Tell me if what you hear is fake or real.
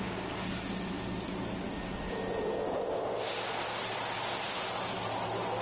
fake